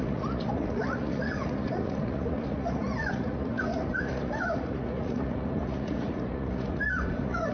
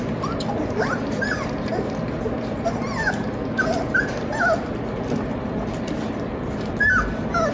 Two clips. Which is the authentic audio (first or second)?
second